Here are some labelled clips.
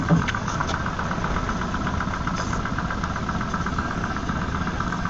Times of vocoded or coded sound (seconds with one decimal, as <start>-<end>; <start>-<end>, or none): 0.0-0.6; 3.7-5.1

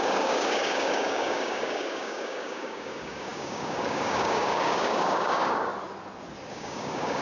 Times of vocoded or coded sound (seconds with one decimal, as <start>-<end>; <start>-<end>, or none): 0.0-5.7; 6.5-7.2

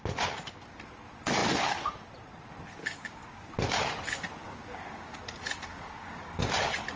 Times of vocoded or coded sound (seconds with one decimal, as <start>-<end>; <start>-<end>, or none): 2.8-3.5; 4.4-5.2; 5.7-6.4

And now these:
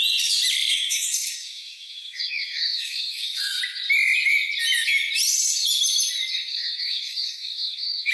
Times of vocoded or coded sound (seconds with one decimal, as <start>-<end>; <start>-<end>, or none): 0.7-3.6; 6.5-8.1

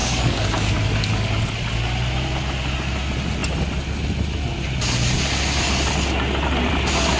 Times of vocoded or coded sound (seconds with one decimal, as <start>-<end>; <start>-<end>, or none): 0.0-1.4

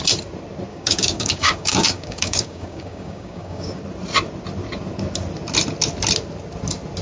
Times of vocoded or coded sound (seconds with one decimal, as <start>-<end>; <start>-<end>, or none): 0.7-3.8

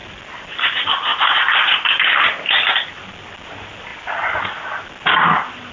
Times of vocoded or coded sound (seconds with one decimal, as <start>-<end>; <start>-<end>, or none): none